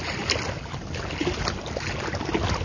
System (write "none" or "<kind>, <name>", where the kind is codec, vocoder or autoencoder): none